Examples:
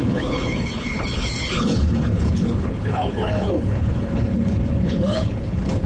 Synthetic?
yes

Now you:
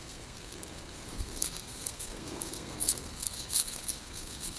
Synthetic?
yes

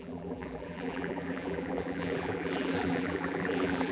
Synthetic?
yes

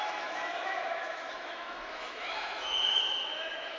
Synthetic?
yes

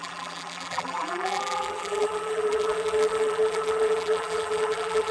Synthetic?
yes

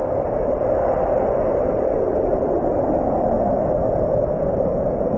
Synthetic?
no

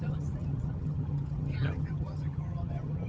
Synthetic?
yes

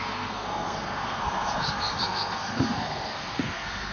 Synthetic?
yes